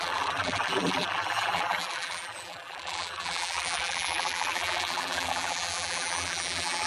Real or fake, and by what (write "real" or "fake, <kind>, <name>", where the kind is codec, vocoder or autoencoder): fake, vocoder, BigVGAN v2